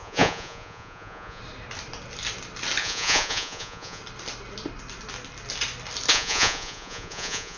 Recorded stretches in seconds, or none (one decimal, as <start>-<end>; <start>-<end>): 1.4-2.8; 4.0-6.1